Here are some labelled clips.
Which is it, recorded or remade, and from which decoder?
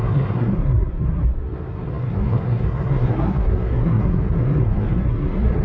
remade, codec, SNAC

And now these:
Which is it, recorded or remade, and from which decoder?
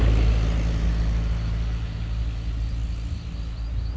recorded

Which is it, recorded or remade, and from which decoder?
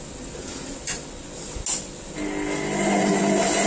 recorded